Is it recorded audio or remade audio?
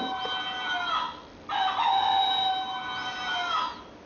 recorded